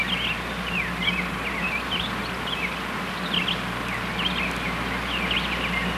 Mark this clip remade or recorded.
recorded